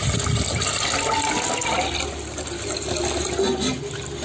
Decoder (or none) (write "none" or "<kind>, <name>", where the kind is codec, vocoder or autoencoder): none